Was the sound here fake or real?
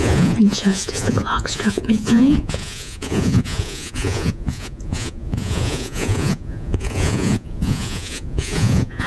fake